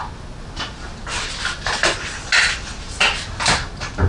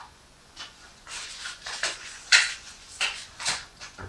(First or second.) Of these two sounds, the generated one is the second